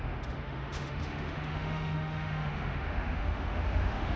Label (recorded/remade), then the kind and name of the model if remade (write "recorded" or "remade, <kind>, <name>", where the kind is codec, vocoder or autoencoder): remade, autoencoder, DAC-VAE